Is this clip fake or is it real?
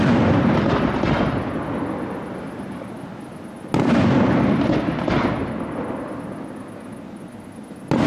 real